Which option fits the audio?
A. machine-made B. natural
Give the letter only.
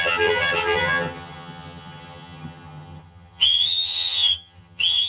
A